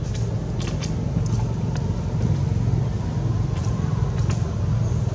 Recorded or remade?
recorded